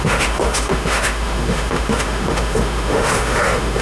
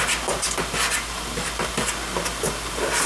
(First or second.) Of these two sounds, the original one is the second